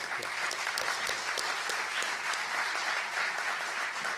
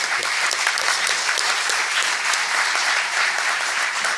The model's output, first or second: second